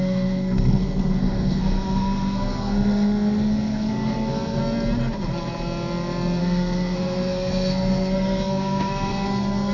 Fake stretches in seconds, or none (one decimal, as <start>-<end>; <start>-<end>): 0.0-4.6; 6.4-9.7